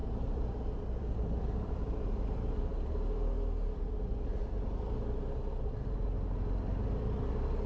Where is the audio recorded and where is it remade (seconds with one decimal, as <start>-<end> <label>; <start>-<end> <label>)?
0.0-0.5 remade; 0.5-7.7 recorded